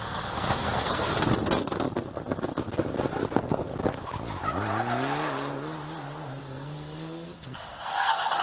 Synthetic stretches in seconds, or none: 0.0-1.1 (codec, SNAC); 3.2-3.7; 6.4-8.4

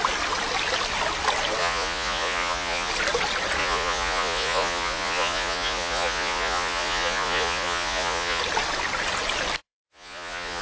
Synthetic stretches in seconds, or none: 1.6-2.9 (vocoder, Vocos); 3.6-8.4; 9.6-10.6

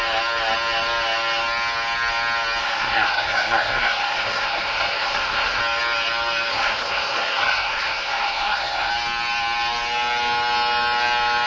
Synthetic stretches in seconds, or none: 2.6-5.6 (codec, SNAC); 6.5-8.9

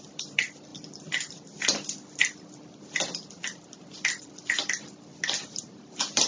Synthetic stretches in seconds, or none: none

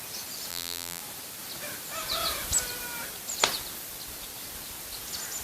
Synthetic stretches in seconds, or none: 0.5-1.0 (vocoder, BigVGAN v2)

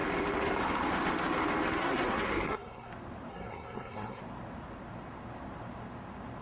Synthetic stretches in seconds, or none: 1.8-2.9 (codec, SNAC); 3.3-4.2

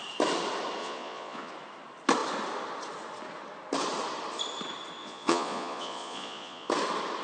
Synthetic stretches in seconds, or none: 0.8-1.5 (vocoder, Vocos); 5.0-6.7